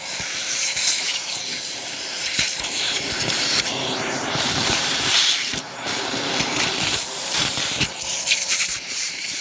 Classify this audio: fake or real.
fake